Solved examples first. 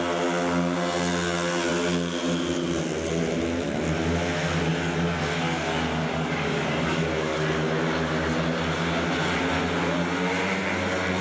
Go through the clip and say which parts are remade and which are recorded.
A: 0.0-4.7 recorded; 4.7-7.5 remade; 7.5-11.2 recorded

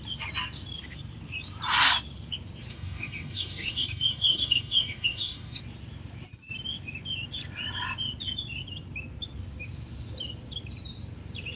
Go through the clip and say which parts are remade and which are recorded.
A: 0.0-2.7 recorded; 2.7-5.6 remade; 5.6-11.6 recorded

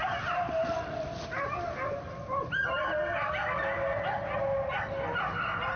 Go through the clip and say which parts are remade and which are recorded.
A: 0.0-5.8 recorded

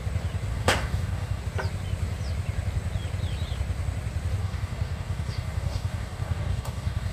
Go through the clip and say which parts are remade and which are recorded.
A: 0.0-0.5 recorded; 0.5-1.4 remade; 1.4-4.4 recorded; 4.4-7.1 remade

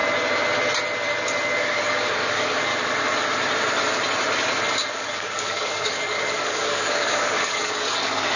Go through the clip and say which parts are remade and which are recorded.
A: 0.0-1.6 recorded; 1.6-2.7 remade; 2.7-4.9 recorded; 4.9-8.4 remade

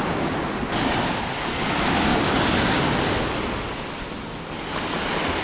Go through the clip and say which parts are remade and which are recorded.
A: 0.0-5.4 recorded

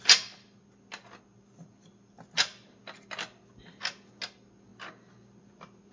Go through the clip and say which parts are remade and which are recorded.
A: 0.0-5.9 recorded

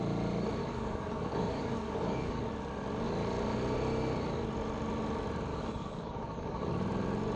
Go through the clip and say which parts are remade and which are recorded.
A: 0.0-0.6 recorded; 0.6-2.4 remade; 2.4-5.5 recorded; 5.5-6.7 remade; 6.7-7.4 recorded